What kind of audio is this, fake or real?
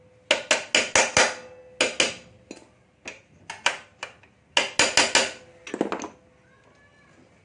real